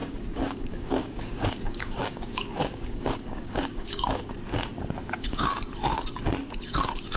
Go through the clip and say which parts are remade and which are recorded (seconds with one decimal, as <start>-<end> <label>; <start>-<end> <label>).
0.0-4.3 remade; 4.3-5.0 recorded; 5.0-5.5 remade; 5.5-7.2 recorded